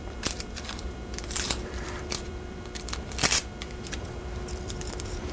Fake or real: fake